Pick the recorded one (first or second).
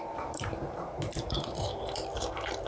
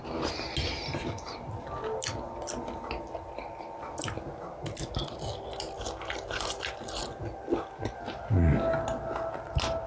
second